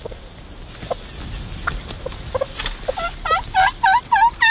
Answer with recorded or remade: recorded